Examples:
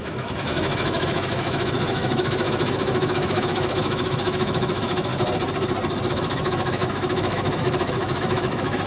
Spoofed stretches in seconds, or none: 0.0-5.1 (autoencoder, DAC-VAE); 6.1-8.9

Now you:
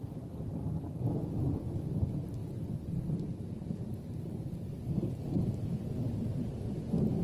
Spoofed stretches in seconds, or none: none

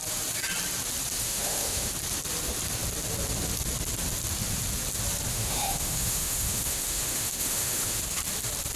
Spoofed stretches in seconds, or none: 1.2-1.9 (autoencoder, DAC-VAE); 5.3-8.0